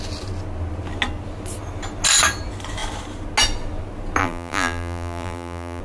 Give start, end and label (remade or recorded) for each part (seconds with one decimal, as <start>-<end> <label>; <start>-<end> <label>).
0.0-4.2 recorded; 4.2-5.8 remade